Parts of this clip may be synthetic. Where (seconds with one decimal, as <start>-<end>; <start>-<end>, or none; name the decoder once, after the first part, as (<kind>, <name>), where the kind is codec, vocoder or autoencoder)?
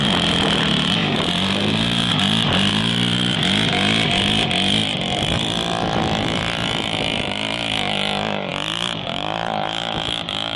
1.0-2.1 (vocoder, BigVGAN v2); 2.7-3.4; 4.8-7.7; 8.5-10.6